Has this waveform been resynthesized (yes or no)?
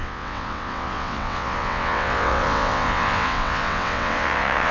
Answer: yes